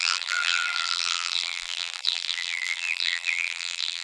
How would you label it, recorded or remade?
remade